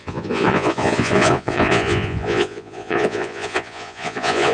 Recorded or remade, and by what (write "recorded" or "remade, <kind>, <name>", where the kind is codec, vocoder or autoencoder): remade, vocoder, Vocos